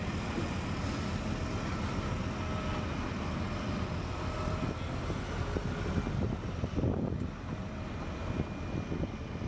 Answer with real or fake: real